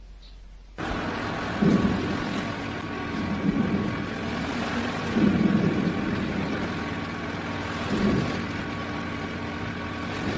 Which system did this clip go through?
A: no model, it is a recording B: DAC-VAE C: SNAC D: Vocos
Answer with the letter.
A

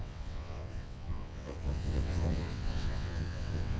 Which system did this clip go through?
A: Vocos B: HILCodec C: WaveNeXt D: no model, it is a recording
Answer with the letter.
C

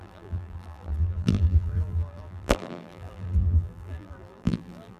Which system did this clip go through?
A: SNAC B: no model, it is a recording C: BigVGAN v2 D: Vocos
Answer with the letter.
C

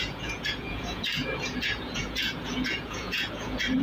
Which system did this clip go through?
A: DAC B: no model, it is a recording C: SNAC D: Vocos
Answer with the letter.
D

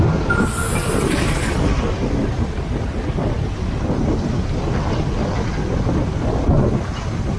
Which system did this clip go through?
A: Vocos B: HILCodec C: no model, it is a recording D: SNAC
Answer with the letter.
C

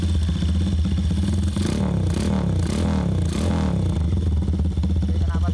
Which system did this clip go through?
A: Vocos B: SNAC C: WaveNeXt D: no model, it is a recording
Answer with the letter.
D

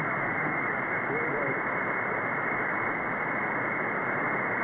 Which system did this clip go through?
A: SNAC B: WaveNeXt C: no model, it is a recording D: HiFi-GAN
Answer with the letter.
C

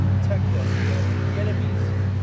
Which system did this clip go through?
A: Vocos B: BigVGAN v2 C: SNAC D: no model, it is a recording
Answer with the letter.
D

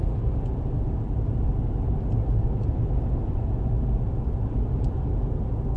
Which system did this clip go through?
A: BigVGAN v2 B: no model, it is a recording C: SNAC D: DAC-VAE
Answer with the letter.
B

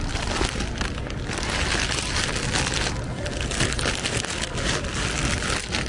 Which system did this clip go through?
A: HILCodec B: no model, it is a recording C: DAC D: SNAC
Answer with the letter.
B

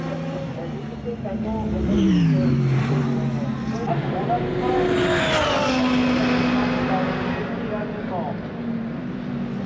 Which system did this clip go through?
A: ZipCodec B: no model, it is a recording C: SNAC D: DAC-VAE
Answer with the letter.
B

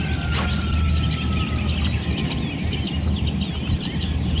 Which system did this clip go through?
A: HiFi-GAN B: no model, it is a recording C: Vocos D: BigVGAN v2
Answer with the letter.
B